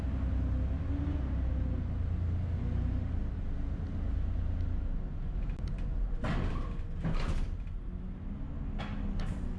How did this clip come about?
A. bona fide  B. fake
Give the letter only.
A